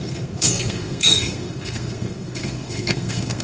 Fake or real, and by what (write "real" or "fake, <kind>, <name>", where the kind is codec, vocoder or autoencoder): fake, codec, SNAC